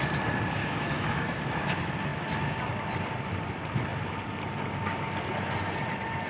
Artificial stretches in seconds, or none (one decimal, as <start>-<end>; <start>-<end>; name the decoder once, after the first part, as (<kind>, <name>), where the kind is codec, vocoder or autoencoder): 0.6-1.7 (codec, DAC)